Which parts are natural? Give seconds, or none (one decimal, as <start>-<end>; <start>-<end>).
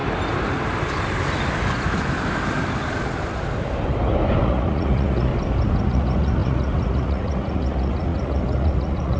0.0-4.4; 5.3-5.8